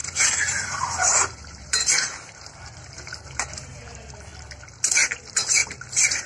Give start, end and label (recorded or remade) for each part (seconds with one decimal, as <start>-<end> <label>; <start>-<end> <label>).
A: 0.0-4.3 remade; 4.3-4.9 recorded; 4.9-6.3 remade